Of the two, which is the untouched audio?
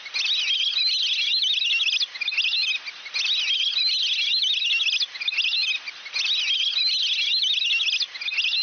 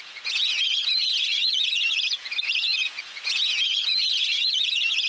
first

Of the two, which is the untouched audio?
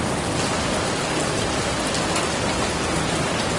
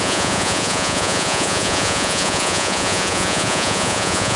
first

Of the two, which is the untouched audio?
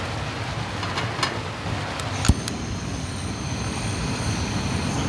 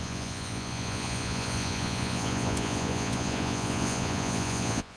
first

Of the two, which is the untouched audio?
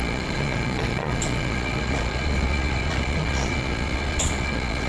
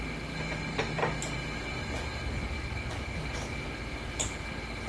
second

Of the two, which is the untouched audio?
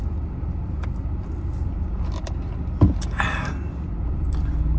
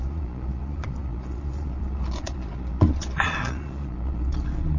first